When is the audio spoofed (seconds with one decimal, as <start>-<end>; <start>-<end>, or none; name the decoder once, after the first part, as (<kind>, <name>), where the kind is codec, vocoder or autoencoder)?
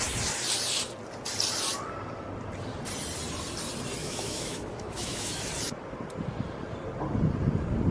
4.0-5.5 (autoencoder, DAC-VAE)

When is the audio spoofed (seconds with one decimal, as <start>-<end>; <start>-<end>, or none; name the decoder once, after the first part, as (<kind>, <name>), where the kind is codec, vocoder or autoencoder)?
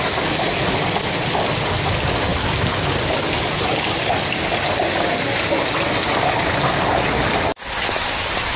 none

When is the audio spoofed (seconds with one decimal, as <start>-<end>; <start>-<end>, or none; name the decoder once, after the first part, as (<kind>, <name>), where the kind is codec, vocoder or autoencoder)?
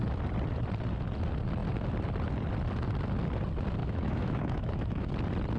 3.8-5.1 (autoencoder, DAC-VAE)